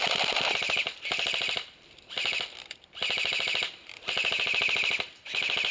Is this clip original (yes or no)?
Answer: no